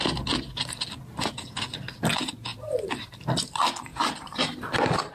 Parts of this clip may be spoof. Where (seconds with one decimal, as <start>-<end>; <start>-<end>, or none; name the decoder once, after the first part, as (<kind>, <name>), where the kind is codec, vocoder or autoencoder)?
3.9-5.1 (vocoder, BigVGAN v2)